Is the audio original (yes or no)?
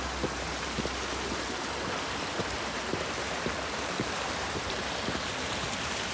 yes